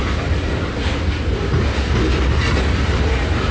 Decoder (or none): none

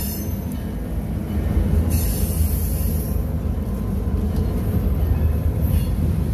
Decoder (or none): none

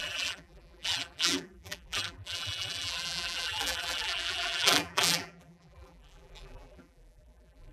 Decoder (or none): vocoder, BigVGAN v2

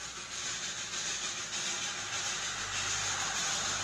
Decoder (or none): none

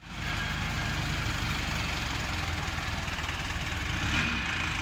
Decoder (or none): none